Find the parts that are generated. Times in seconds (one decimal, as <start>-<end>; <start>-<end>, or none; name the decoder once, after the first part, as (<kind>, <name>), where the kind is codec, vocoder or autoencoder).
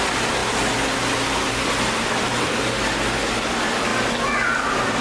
none